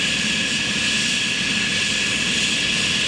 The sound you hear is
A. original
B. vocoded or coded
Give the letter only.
A